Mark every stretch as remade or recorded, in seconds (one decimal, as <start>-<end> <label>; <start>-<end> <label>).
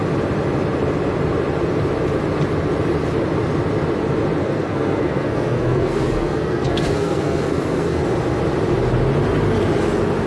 0.0-4.4 recorded; 4.4-8.0 remade; 8.0-10.3 recorded